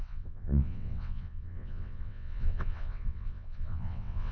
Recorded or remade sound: remade